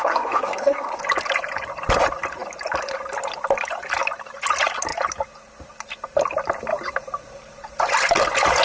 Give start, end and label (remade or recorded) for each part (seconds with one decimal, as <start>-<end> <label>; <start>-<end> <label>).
0.0-1.0 remade; 1.0-8.6 recorded